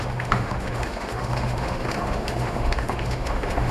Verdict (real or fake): fake